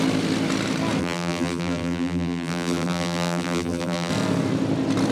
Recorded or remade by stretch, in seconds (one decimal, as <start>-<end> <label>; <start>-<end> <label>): 0.0-1.0 recorded; 1.0-4.1 remade; 4.1-5.1 recorded